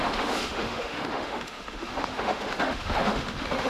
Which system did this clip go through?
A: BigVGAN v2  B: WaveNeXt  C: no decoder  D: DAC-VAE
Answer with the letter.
D